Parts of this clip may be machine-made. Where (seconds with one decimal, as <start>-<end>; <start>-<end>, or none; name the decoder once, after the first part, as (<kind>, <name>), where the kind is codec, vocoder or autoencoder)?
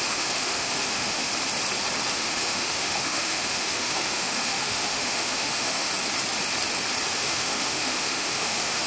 0.0-1.3 (autoencoder, DAC-VAE); 2.1-5.9; 7.2-8.9